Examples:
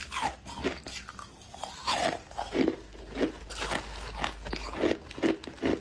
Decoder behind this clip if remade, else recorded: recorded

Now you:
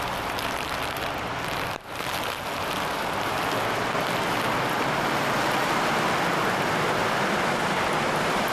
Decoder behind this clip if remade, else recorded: remade, vocoder, BigVGAN v2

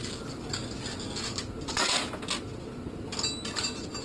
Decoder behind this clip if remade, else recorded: recorded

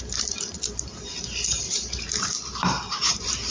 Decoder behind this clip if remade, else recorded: remade, vocoder, BigVGAN v2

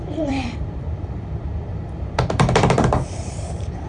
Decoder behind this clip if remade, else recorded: remade, vocoder, BigVGAN v2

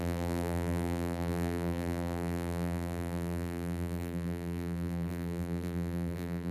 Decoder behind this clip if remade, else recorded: remade, vocoder, BigVGAN v2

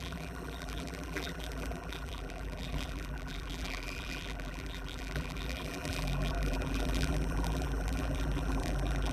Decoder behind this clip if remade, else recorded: remade, vocoder, BigVGAN v2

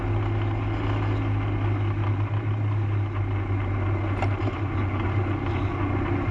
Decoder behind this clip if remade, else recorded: recorded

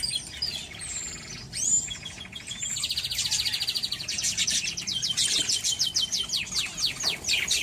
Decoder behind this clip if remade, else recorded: recorded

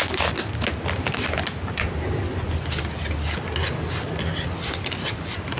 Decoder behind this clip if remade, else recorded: recorded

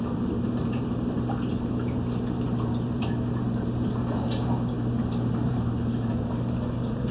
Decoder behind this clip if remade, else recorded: remade, vocoder, BigVGAN v2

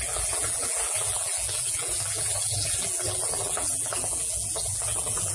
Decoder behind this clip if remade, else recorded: remade, vocoder, BigVGAN v2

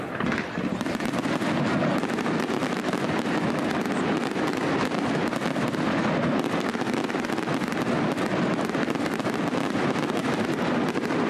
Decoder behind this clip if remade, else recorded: recorded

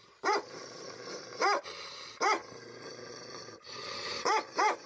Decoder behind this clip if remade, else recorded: remade, vocoder, BigVGAN v2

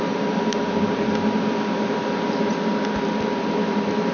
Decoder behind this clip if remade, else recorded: recorded